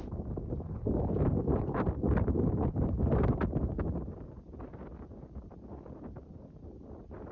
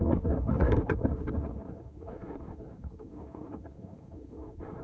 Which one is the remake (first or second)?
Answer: second